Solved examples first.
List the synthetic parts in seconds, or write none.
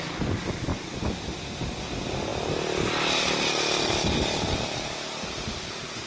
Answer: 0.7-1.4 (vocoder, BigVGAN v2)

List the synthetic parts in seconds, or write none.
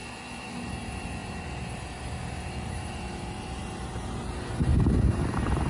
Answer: 0.0-4.7 (vocoder, BigVGAN v2); 5.2-5.7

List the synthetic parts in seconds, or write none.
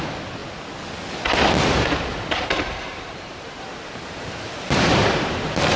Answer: 2.1-5.8 (vocoder, BigVGAN v2)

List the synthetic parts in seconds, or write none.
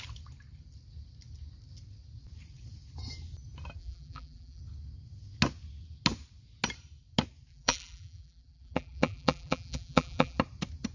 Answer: 3.8-4.6 (vocoder, BigVGAN v2); 7.5-10.4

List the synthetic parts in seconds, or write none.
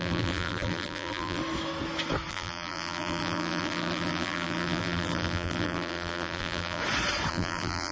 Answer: 0.0-1.4 (vocoder, BigVGAN v2); 2.3-6.8; 7.3-7.9